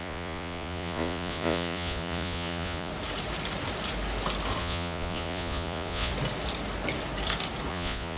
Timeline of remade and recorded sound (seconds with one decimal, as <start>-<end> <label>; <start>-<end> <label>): 0.0-2.9 remade; 2.9-4.6 recorded; 4.6-6.1 remade; 6.1-7.7 recorded; 7.7-8.2 remade